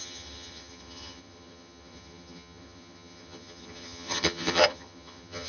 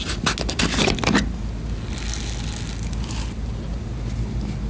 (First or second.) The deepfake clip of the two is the first